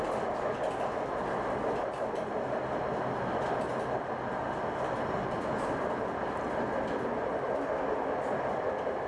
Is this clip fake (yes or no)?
no